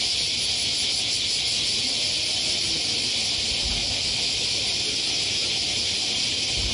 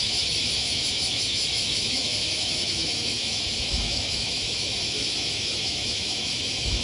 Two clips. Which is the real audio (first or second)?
first